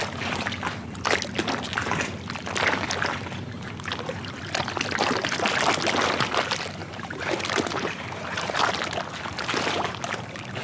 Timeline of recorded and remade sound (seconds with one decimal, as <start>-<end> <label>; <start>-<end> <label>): 0.0-6.8 recorded; 6.8-8.6 remade; 8.6-10.6 recorded